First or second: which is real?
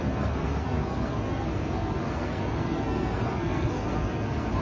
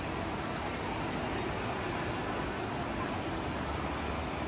second